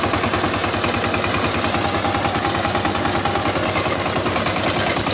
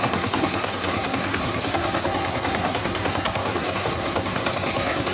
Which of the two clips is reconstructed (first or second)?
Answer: second